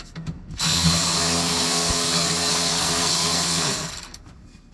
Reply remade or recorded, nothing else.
remade